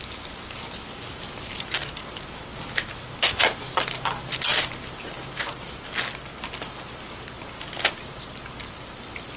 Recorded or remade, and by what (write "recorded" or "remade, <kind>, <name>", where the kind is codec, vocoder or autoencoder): recorded